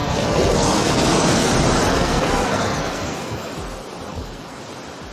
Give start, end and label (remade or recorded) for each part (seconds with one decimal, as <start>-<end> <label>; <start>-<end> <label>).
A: 0.0-1.5 remade; 1.5-1.9 recorded; 1.9-3.5 remade; 3.5-4.1 recorded; 4.1-4.6 remade; 4.6-5.1 recorded